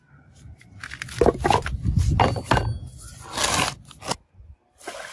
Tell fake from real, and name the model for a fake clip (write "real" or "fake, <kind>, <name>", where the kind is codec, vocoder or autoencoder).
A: real